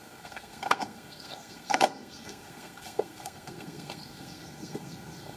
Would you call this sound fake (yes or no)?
yes